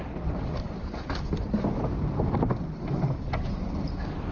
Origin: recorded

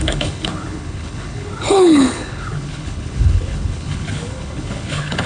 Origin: remade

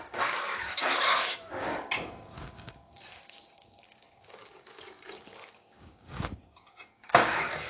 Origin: remade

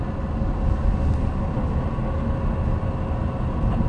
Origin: recorded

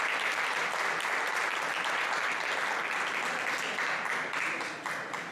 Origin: recorded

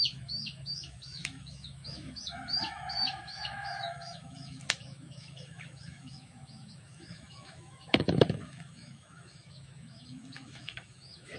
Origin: remade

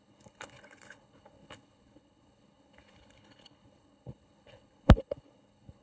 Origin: remade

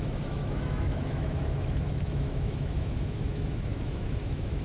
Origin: remade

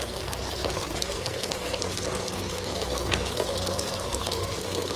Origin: remade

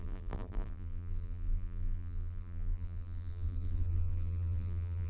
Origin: remade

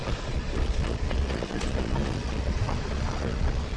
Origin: remade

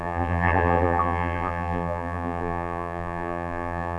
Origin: remade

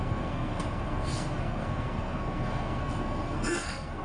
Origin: remade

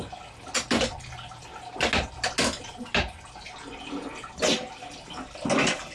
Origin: recorded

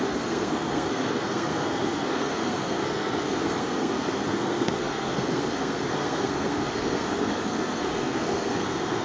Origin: remade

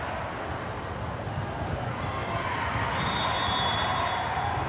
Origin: recorded